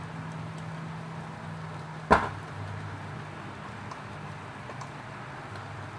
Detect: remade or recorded recorded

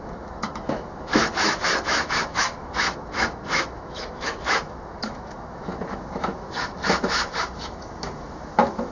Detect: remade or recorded remade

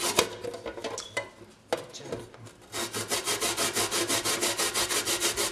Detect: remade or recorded recorded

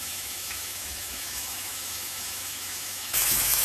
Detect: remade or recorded remade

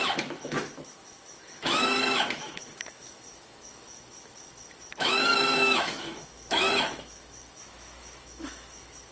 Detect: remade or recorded remade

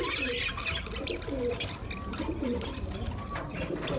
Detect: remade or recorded recorded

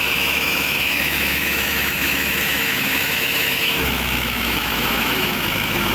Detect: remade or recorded remade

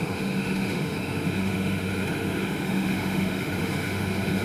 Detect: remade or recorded remade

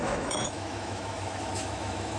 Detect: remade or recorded remade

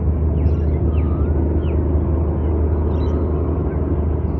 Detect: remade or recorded recorded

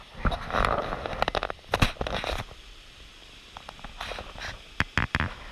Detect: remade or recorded recorded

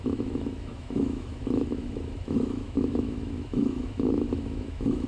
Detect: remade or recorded remade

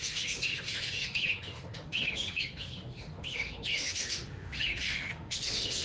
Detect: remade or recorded remade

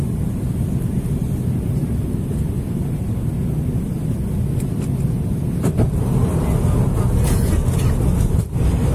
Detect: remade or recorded recorded